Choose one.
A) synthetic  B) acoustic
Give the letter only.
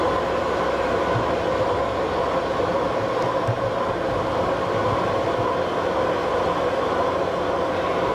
B